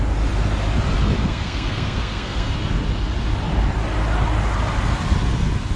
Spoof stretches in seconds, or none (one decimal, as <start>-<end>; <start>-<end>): 1.2-2.5